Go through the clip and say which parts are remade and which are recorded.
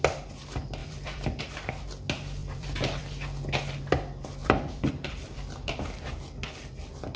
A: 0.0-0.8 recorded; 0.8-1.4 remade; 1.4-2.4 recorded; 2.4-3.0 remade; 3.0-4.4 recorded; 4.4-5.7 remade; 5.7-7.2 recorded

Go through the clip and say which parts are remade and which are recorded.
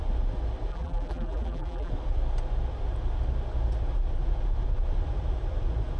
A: 0.0-0.7 recorded; 0.7-1.9 remade; 1.9-6.0 recorded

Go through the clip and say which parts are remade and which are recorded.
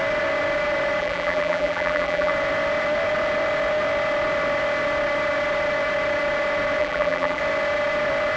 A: 0.0-1.0 recorded; 1.0-2.3 remade; 2.3-6.8 recorded; 6.8-7.4 remade; 7.4-8.4 recorded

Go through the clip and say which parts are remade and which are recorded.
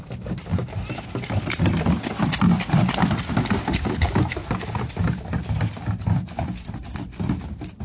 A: 0.0-0.5 recorded; 0.5-1.6 remade; 1.6-7.8 recorded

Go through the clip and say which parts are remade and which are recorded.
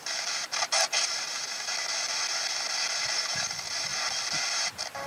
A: 0.0-1.7 remade; 1.7-3.0 recorded; 3.0-3.9 remade; 3.9-4.5 recorded; 4.5-5.1 remade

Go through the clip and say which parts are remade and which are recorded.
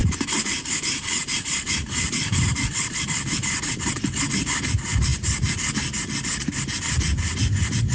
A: 0.0-4.5 remade; 4.5-7.9 recorded